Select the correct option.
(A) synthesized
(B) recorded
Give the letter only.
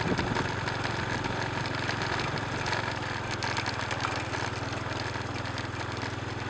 B